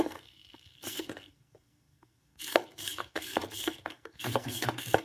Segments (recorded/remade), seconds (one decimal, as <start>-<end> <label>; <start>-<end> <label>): 0.0-5.0 remade